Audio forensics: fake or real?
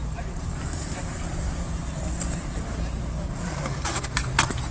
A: fake